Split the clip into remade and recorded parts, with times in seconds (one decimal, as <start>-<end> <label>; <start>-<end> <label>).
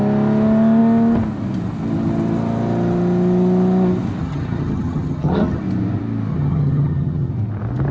0.0-4.2 recorded; 4.2-5.6 remade; 5.6-6.3 recorded; 6.3-7.3 remade; 7.3-7.9 recorded